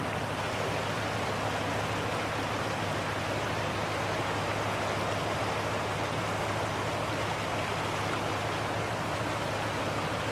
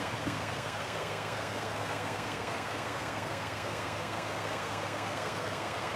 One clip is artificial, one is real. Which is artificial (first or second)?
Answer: second